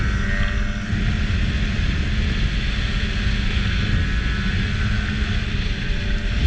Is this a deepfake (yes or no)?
no